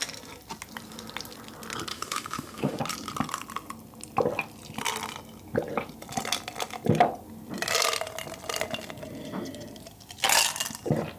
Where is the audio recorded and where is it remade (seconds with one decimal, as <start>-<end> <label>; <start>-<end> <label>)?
0.0-1.9 recorded; 1.9-2.8 remade; 2.8-11.2 recorded